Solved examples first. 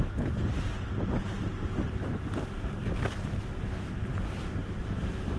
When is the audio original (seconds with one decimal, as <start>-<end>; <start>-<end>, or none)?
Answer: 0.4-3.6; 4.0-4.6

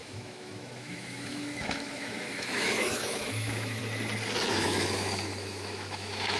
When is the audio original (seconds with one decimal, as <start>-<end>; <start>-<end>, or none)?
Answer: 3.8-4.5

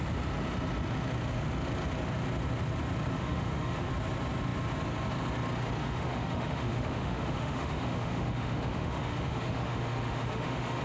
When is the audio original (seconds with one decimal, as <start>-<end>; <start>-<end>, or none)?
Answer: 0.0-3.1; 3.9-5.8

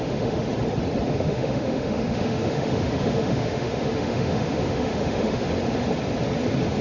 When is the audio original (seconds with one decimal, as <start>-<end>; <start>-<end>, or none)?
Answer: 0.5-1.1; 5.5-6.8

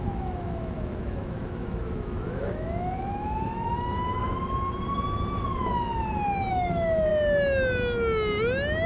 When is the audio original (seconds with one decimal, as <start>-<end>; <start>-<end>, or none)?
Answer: 4.2-6.5; 7.1-8.9

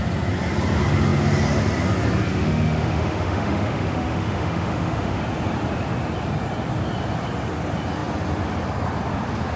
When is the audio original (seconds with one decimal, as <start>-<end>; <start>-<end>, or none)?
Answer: 0.0-2.3; 5.2-9.6